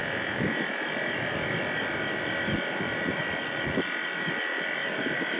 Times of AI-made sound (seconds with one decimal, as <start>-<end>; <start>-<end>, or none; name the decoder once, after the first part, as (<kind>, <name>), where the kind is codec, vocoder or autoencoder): none